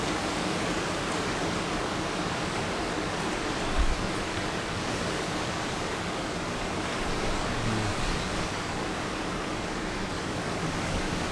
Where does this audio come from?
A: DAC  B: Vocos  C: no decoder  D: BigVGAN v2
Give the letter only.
A